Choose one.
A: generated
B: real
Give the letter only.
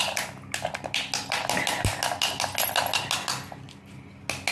B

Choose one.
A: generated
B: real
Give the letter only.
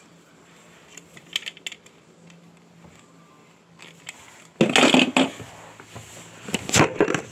B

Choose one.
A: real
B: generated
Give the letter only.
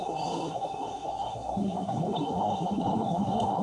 B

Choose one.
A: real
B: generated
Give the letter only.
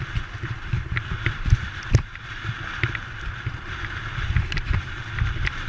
B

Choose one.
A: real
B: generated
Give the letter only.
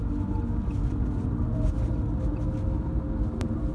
A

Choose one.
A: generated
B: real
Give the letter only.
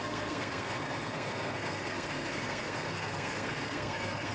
A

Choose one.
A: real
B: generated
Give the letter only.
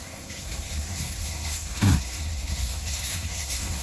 B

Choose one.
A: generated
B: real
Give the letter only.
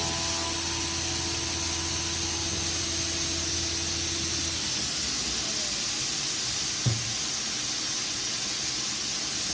B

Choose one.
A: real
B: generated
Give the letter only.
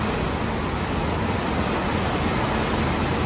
A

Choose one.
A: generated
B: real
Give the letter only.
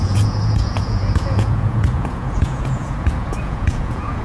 A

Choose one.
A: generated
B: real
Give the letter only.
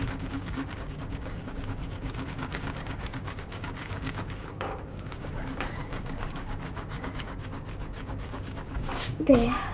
A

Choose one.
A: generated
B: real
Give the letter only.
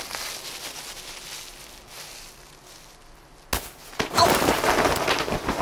B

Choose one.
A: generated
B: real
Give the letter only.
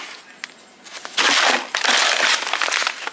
B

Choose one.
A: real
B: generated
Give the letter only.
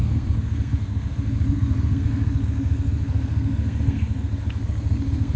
B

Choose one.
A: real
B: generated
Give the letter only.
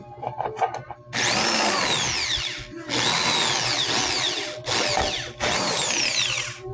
A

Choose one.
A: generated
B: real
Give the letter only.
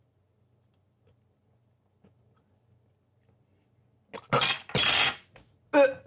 B